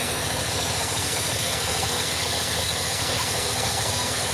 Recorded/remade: remade